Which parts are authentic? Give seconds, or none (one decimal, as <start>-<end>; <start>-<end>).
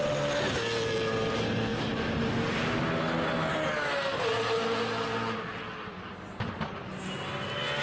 0.0-7.8